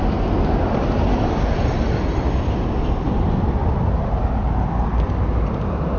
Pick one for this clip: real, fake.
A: real